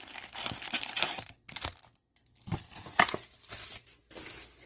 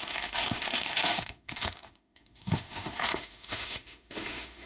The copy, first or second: second